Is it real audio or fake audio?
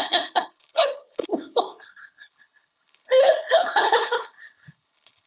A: fake